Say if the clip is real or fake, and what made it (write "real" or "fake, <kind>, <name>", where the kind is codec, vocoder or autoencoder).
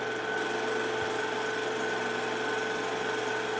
real